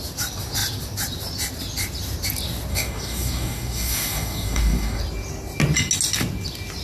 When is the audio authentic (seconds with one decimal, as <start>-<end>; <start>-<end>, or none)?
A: 0.0-2.7; 5.0-6.8